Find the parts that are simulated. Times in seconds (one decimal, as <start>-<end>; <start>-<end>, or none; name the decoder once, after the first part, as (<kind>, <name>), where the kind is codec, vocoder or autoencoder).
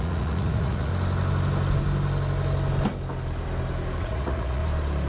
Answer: 0.0-0.9 (vocoder, Vocos); 4.0-4.6